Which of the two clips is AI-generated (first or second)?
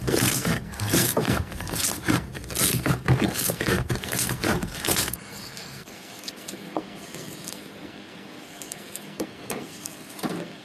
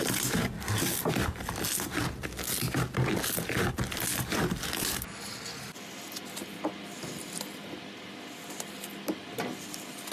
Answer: first